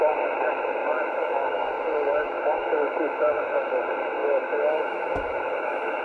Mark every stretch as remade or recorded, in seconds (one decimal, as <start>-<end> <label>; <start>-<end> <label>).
0.0-0.8 recorded; 0.8-1.7 remade; 1.7-2.1 recorded; 2.1-3.8 remade; 3.8-4.2 recorded; 4.2-6.0 remade